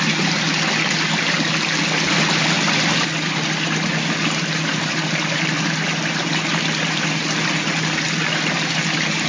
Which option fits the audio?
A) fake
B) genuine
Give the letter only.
B